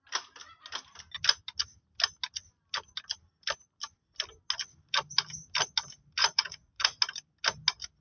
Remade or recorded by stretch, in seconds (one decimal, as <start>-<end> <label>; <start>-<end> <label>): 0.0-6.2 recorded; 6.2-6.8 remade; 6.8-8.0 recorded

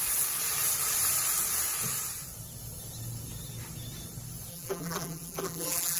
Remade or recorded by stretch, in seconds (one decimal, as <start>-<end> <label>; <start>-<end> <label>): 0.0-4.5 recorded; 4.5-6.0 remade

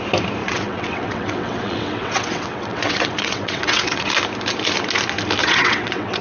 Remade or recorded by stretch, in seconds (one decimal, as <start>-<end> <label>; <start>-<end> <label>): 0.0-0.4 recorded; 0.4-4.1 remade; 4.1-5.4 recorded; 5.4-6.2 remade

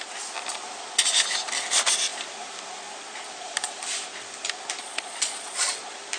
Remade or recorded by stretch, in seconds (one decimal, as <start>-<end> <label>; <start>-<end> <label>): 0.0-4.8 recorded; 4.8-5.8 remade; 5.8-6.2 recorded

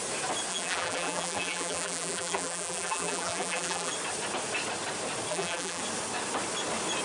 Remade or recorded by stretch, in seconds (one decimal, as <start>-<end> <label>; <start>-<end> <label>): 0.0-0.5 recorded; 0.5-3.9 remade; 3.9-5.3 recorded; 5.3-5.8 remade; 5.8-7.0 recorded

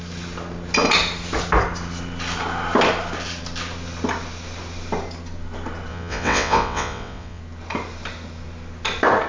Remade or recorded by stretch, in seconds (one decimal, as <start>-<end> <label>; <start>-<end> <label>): 0.0-5.9 recorded; 5.9-7.4 remade; 7.4-9.3 recorded

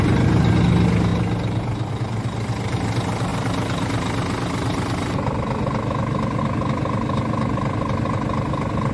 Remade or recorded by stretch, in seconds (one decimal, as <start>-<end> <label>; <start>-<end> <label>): 0.0-8.9 recorded

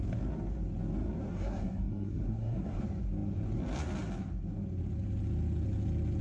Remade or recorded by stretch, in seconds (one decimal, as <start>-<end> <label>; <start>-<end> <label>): 0.0-1.3 recorded; 1.3-2.8 remade; 2.8-6.2 recorded